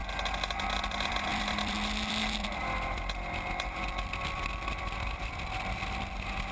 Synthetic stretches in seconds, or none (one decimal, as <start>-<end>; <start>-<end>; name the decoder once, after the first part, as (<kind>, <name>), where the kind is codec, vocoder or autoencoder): 0.8-6.5 (vocoder, BigVGAN v2)